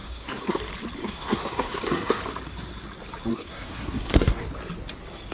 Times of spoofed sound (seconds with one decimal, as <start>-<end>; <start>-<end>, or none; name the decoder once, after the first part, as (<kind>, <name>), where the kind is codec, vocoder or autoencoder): 0.0-0.6 (codec, SNAC); 1.0-2.2; 3.3-4.4

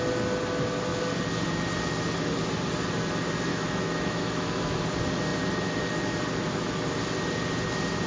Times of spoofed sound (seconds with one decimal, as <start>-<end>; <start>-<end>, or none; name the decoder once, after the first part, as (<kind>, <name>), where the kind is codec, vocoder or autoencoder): 3.5-4.8 (autoencoder, DAC-VAE)

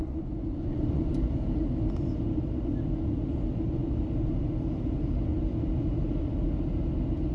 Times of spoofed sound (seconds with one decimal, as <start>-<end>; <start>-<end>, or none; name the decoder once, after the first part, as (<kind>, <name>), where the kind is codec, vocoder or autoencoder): 0.0-1.0 (vocoder, Vocos)

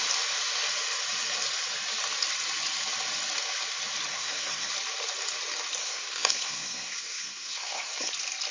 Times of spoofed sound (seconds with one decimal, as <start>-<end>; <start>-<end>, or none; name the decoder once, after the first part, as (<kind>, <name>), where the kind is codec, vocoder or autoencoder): 4.1-4.7 (codec, SNAC); 5.8-8.1

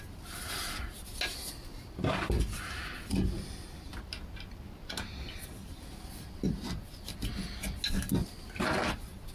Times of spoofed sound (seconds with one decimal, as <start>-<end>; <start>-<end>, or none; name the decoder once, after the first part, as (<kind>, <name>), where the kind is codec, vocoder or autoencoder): none

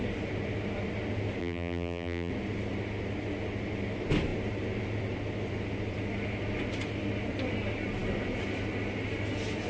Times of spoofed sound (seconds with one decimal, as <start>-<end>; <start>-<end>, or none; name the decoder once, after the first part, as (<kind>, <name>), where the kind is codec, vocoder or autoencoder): 1.4-2.3 (vocoder, BigVGAN v2)

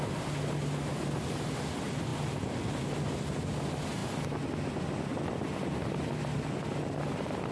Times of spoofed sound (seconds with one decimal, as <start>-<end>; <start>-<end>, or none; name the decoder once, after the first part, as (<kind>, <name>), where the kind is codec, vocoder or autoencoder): none

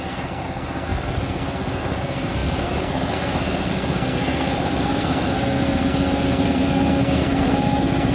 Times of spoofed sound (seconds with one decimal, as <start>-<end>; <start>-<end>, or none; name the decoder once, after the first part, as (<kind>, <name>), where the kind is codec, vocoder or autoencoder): 0.0-8.1 (codec, SNAC)